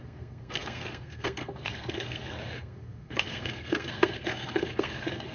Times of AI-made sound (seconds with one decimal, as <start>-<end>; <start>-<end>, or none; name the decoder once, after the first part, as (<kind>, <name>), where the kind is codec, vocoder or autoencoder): 0.0-5.3 (codec, SNAC)